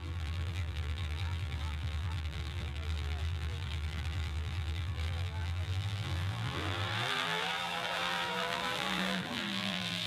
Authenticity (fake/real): fake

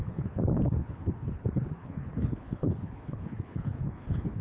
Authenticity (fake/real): fake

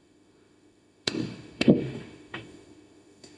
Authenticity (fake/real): fake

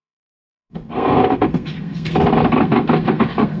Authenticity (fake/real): fake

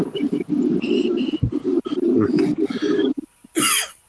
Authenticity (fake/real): real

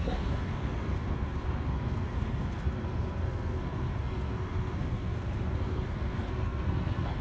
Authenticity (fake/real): fake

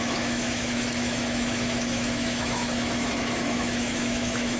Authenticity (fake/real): fake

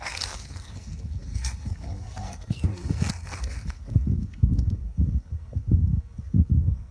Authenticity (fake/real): fake